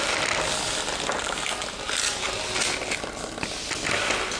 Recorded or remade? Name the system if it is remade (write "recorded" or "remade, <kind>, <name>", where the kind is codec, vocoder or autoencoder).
recorded